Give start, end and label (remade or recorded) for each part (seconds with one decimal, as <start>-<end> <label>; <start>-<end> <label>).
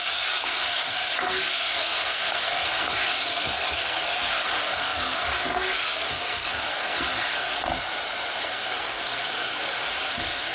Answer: 0.0-7.7 remade; 7.7-8.4 recorded; 8.4-10.5 remade